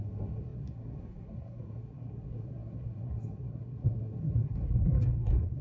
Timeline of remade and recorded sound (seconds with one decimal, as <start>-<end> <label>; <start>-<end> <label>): 0.0-5.6 remade